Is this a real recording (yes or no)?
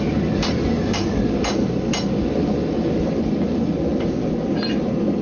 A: yes